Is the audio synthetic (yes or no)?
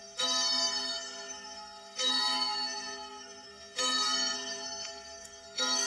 yes